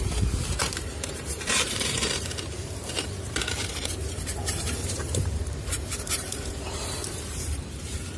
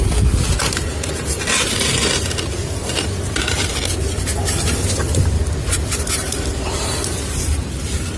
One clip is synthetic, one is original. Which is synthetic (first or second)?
first